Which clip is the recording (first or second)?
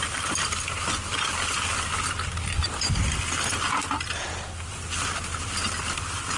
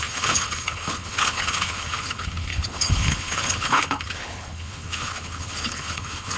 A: first